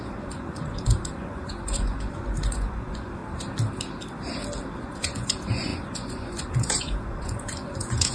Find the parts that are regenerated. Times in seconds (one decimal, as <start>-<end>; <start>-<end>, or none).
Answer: 0.0-3.2; 4.8-8.1